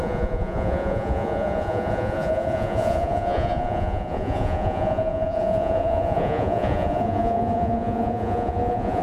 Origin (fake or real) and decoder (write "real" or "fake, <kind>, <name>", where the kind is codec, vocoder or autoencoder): fake, vocoder, Vocos